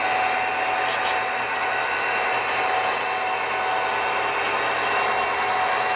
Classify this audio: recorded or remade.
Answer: recorded